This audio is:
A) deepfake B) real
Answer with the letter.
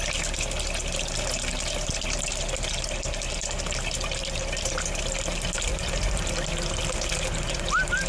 B